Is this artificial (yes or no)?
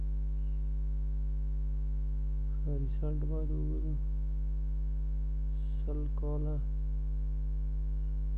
no